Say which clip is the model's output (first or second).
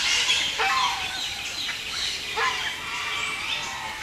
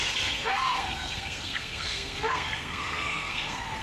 second